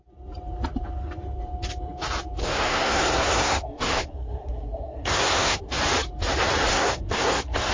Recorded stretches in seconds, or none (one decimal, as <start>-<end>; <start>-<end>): 0.0-2.4; 5.7-6.7